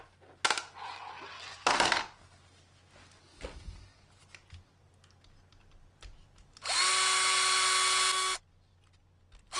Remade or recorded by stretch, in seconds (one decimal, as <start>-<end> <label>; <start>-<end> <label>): 0.0-9.6 recorded